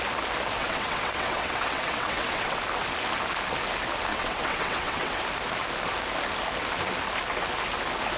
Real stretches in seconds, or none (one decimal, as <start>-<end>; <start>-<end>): 0.0-0.6; 2.6-4.1; 5.2-8.2